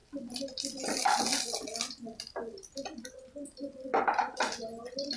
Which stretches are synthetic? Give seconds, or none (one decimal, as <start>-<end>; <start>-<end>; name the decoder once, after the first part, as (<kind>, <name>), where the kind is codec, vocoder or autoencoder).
none